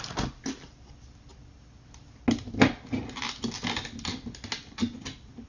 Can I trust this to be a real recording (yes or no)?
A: yes